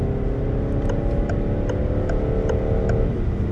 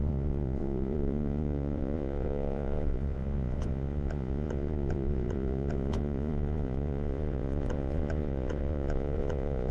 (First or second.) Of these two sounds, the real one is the first